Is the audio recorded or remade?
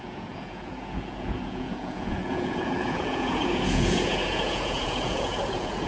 remade